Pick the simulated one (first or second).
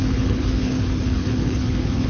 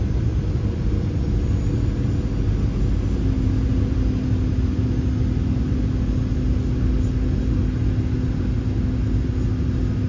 first